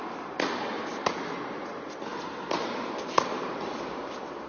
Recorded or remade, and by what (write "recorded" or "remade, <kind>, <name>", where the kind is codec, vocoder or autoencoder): recorded